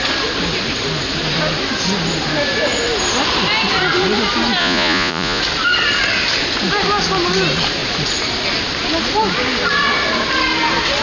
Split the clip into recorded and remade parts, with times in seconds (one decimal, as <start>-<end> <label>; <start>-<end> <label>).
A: 0.0-4.6 recorded; 4.6-5.4 remade; 5.4-11.0 recorded